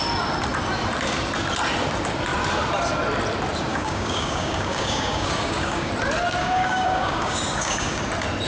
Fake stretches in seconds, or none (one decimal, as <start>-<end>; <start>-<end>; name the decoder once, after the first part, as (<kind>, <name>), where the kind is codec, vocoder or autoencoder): 3.7-5.9 (codec, DAC); 6.4-8.0